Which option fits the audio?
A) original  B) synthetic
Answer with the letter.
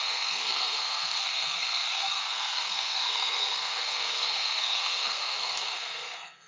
B